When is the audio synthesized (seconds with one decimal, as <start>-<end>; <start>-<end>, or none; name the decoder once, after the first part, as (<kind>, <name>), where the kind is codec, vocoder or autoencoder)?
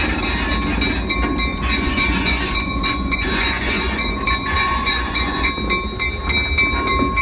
1.5-5.5 (vocoder, Vocos)